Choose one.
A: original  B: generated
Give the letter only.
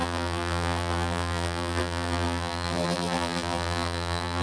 B